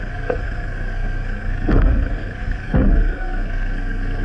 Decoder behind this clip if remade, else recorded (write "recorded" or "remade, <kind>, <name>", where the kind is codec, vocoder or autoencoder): remade, codec, SNAC